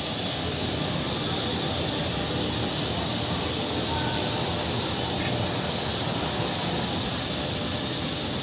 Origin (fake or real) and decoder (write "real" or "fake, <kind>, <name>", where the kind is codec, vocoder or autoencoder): real